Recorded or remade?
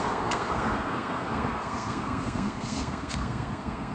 remade